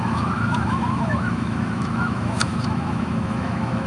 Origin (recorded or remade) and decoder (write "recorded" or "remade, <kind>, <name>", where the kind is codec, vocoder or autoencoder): remade, autoencoder, DAC-VAE